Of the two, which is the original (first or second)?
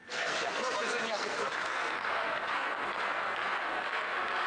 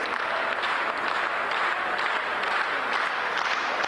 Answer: second